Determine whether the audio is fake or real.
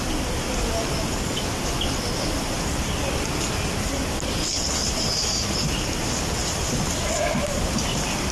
real